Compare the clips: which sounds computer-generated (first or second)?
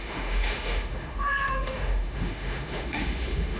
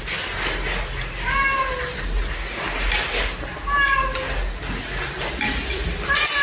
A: first